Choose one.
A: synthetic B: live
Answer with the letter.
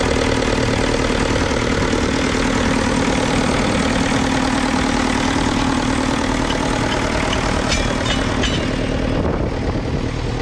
B